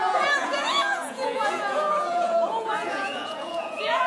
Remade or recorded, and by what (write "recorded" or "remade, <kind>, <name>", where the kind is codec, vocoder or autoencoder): remade, vocoder, Vocos